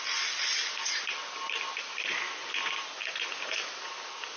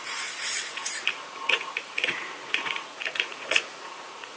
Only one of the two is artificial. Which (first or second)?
second